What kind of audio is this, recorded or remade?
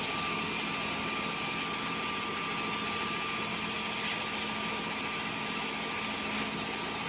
recorded